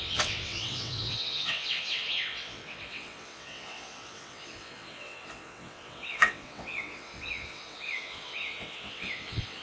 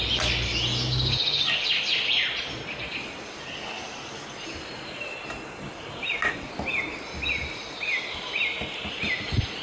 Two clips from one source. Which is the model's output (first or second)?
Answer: first